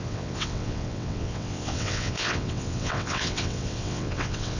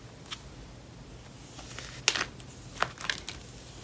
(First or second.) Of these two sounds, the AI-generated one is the first